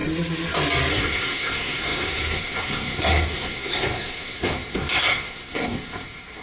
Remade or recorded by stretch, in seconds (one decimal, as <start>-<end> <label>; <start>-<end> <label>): 0.0-0.9 recorded; 0.9-6.4 remade

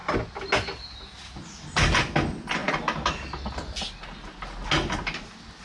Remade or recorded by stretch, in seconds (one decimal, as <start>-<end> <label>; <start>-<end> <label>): 0.0-5.6 recorded